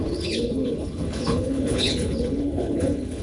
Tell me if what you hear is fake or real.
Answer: fake